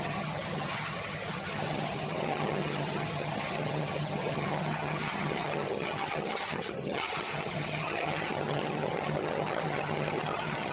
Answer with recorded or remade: remade